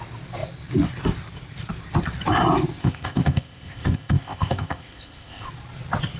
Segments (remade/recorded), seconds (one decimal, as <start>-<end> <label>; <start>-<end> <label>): 0.0-2.8 recorded; 2.8-5.5 remade; 5.5-6.2 recorded